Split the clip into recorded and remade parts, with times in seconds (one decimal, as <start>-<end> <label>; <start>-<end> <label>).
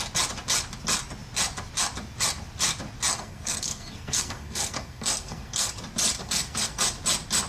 0.0-3.1 recorded; 3.1-5.7 remade; 5.7-6.2 recorded; 6.2-6.8 remade; 6.8-7.5 recorded